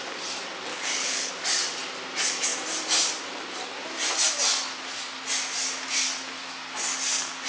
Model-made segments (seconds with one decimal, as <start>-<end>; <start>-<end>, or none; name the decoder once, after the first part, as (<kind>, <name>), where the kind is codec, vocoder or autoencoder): 0.7-1.3 (codec, HILCodec)